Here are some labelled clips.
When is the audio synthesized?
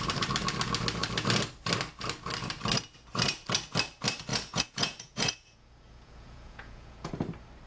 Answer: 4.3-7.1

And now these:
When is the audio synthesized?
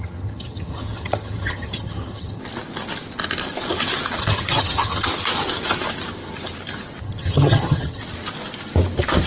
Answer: 0.0-2.4; 4.2-5.1; 7.0-8.0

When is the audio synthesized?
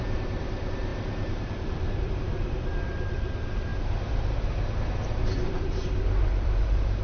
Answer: 0.0-7.0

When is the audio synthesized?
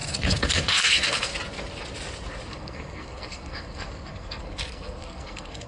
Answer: 0.0-1.3; 2.5-5.7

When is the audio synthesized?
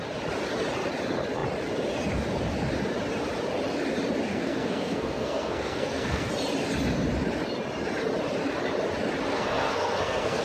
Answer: 4.3-6.3; 9.3-10.4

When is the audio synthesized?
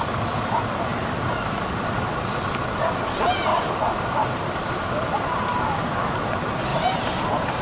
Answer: 0.9-1.6; 3.5-5.6; 6.7-7.6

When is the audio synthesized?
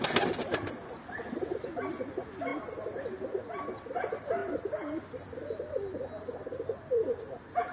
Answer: none